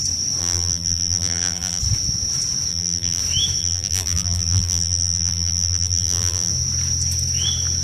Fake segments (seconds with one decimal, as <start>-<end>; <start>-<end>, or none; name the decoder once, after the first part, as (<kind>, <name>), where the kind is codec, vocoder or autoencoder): 0.4-1.8 (vocoder, BigVGAN v2); 2.7-3.2; 3.6-6.5